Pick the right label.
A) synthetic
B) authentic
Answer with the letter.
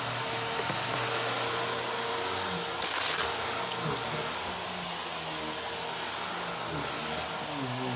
B